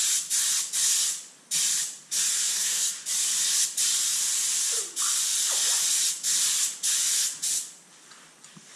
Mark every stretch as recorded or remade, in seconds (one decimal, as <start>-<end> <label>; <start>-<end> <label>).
0.0-2.3 recorded; 2.3-2.9 remade; 2.9-8.8 recorded